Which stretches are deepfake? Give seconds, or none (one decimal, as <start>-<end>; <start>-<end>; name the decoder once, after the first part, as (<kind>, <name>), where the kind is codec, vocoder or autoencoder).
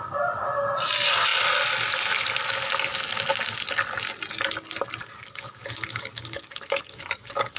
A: 5.0-7.6 (codec, DAC)